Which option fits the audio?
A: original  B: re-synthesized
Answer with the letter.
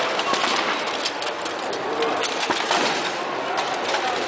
A